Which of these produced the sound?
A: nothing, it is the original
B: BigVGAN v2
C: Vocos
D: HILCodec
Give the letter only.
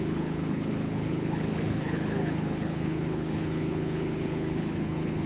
D